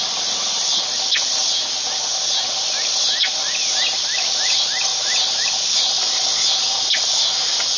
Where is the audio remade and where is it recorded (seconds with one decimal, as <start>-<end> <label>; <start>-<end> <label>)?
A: 0.0-1.4 remade; 1.4-2.4 recorded; 2.4-3.3 remade; 3.3-4.0 recorded; 4.0-4.9 remade; 4.9-5.5 recorded; 5.5-7.8 remade

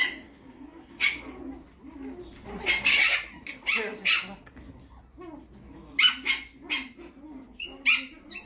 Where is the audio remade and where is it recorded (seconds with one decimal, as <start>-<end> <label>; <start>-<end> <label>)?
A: 0.0-8.5 recorded

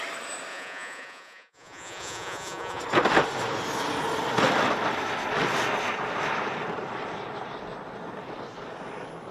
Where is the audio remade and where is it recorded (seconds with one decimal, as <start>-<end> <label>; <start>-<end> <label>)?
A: 0.0-0.5 recorded; 0.5-2.8 remade; 2.8-9.3 recorded

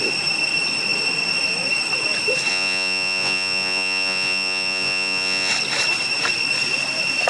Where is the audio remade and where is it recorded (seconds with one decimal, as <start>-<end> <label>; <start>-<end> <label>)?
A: 0.0-2.5 recorded; 2.5-5.5 remade; 5.5-7.3 recorded

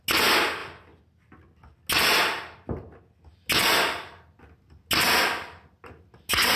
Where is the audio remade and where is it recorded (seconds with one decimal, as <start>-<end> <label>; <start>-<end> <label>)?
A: 0.0-6.6 recorded

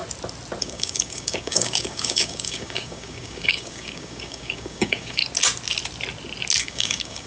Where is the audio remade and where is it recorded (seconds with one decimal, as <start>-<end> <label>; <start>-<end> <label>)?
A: 0.0-0.6 recorded; 0.6-5.2 remade; 5.2-6.6 recorded; 6.6-7.3 remade